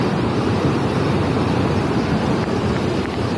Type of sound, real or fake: real